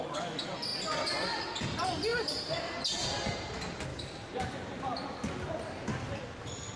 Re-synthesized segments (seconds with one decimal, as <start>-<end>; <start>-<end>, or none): 2.1-2.8; 3.9-5.3; 5.9-6.8